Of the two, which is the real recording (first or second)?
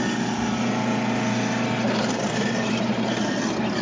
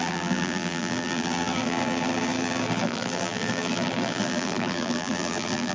first